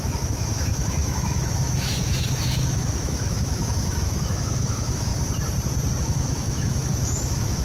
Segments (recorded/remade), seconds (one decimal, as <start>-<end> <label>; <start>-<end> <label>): 0.0-5.1 remade; 5.1-6.0 recorded; 6.0-7.6 remade